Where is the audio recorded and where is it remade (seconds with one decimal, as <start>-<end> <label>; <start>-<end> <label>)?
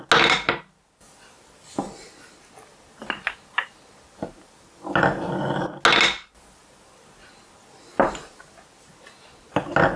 0.0-10.0 recorded